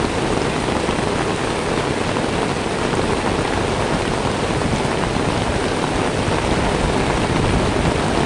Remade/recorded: recorded